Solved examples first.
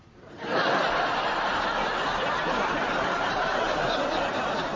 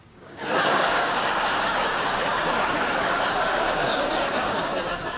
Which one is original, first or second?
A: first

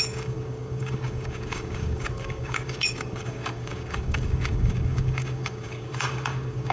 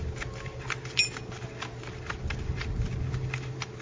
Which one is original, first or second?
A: second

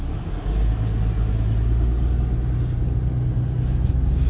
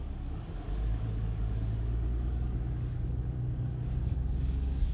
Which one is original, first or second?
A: first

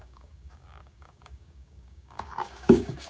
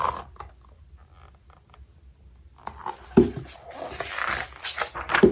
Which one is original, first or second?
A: second